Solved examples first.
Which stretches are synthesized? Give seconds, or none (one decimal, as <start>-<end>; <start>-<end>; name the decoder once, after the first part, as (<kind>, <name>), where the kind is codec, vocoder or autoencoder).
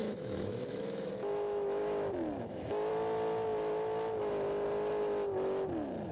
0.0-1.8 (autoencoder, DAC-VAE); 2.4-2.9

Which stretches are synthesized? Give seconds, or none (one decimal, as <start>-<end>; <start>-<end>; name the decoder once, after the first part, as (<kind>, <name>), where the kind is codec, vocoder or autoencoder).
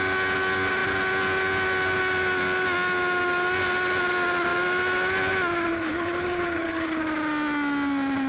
5.7-7.0 (codec, HILCodec)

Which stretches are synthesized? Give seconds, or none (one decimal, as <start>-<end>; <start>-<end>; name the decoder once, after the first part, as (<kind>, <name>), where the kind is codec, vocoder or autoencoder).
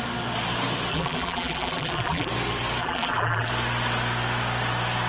0.9-2.3 (vocoder, BigVGAN v2); 2.8-3.5